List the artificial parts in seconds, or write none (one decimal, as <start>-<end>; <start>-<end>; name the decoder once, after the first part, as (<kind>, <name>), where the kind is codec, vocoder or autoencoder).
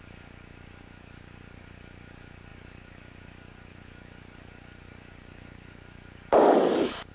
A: 0.0-7.1 (codec, DAC)